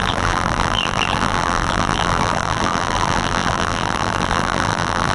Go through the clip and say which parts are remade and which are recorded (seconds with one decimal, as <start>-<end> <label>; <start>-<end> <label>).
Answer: 0.0-5.1 remade